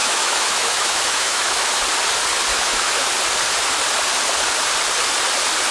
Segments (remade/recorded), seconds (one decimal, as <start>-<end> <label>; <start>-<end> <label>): 0.0-1.7 remade; 1.7-2.5 recorded; 2.5-3.1 remade; 3.1-5.7 recorded